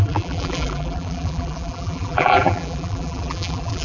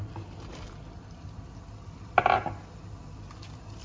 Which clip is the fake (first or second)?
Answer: first